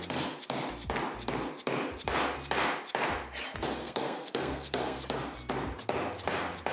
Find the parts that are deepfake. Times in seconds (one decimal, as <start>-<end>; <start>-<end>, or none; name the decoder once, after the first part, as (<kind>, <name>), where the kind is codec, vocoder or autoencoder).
3.8-5.0 (codec, SNAC)